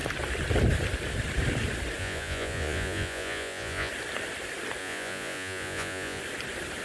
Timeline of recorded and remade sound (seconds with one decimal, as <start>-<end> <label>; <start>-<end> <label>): 0.0-2.0 recorded; 2.0-3.9 remade; 3.9-4.8 recorded; 4.8-6.2 remade; 6.2-6.8 recorded